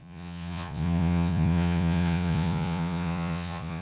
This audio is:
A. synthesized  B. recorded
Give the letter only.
A